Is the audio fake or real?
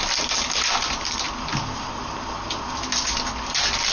real